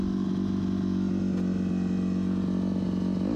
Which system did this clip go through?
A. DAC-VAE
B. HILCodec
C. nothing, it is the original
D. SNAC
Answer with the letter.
C